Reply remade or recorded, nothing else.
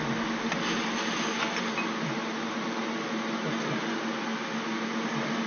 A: recorded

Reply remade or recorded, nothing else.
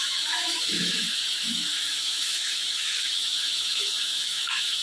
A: remade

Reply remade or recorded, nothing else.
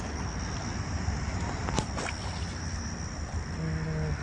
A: recorded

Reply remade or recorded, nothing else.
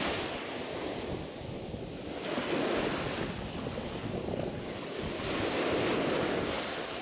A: recorded